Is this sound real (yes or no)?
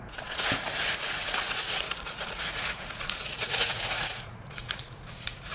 no